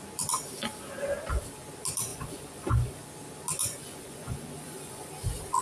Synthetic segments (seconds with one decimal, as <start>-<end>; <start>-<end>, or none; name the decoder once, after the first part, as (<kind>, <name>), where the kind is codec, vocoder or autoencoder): 2.1-3.0 (vocoder, Vocos); 3.6-5.1